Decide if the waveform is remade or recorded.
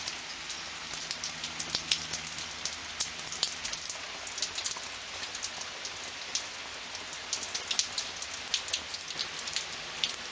recorded